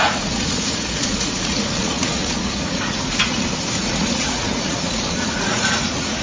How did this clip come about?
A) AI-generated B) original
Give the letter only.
A